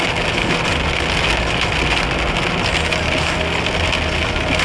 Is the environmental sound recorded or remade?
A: recorded